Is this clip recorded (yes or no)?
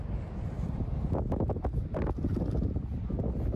yes